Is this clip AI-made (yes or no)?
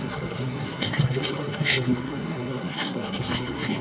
yes